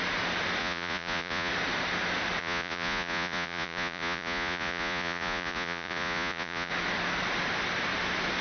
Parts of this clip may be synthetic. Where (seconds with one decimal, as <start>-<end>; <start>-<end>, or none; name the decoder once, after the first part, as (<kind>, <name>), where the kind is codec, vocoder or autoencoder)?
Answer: 0.6-1.5 (vocoder, Vocos); 2.4-6.7